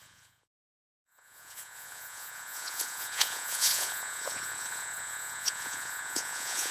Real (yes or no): no